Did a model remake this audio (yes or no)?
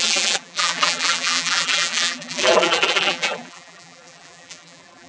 yes